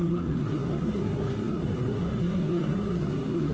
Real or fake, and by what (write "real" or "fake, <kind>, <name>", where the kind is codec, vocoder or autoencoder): fake, codec, SNAC